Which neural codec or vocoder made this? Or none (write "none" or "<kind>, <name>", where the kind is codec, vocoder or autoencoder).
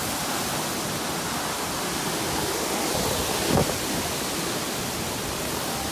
none